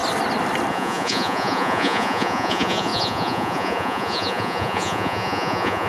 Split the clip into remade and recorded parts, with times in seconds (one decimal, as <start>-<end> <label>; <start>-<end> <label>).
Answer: 0.0-0.7 recorded; 0.7-5.9 remade